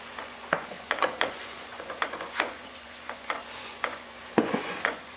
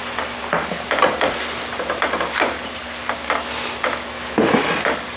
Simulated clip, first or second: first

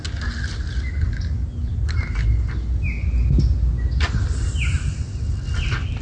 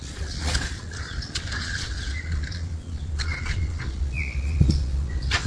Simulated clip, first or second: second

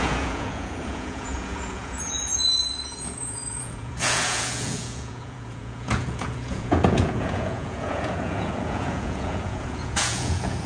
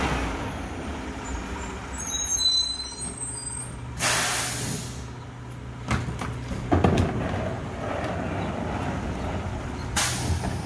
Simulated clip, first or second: first